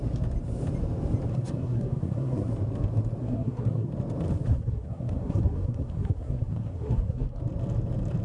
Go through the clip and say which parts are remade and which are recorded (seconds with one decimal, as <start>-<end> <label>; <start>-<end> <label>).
0.0-1.3 recorded; 1.3-2.5 remade; 2.5-3.2 recorded; 3.2-3.9 remade; 3.9-4.5 recorded; 4.5-7.4 remade; 7.4-8.2 recorded